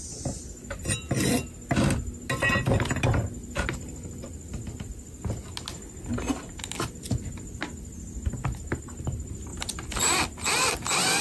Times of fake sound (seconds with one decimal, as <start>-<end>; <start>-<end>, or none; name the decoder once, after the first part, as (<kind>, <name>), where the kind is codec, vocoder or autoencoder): 3.4-4.5 (vocoder, BigVGAN v2)